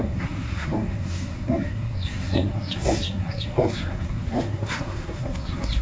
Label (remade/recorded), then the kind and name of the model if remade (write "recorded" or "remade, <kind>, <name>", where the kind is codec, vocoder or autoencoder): remade, codec, SNAC